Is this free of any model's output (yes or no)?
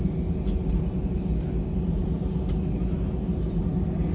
yes